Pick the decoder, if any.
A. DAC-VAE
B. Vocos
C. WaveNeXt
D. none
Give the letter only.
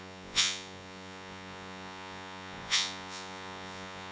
B